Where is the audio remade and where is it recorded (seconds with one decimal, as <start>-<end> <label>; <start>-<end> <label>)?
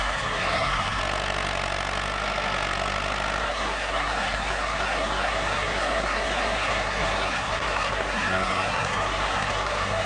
0.0-1.0 remade; 1.0-3.4 recorded; 3.4-10.1 remade